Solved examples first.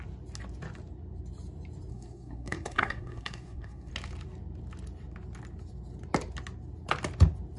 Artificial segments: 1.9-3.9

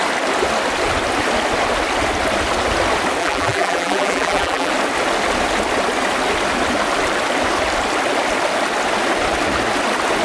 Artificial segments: 3.2-4.7